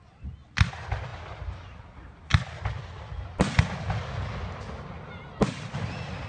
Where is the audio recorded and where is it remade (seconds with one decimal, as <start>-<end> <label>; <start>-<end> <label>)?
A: 0.0-6.3 recorded